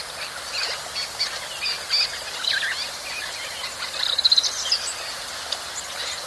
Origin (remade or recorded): recorded